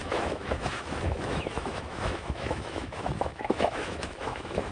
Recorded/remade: remade